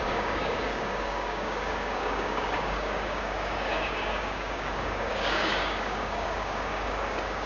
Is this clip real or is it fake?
fake